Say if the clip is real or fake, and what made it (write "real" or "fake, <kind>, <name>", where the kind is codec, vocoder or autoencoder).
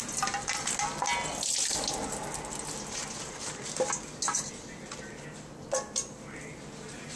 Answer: real